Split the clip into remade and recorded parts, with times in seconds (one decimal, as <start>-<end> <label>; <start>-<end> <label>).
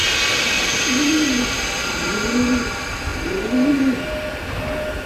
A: 0.0-5.1 recorded